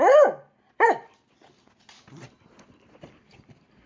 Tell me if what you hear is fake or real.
real